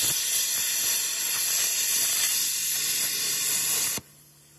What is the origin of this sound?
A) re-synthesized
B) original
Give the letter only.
B